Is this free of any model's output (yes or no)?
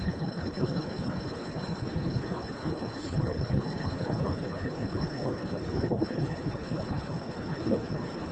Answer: no